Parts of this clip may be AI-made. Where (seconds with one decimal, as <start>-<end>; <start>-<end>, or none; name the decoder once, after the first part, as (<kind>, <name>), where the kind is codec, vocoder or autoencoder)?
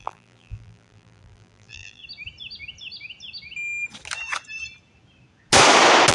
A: 0.0-2.0 (vocoder, BigVGAN v2)